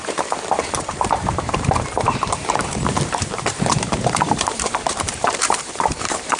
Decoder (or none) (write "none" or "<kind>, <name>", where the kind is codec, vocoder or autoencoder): vocoder, BigVGAN v2